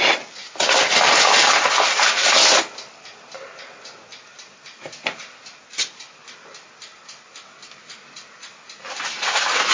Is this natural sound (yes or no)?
yes